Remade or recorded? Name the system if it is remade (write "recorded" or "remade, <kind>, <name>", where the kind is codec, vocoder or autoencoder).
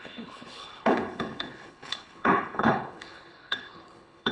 remade, codec, HILCodec